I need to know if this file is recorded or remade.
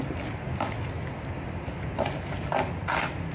recorded